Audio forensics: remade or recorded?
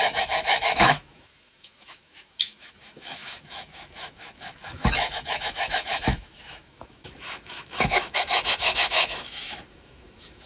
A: remade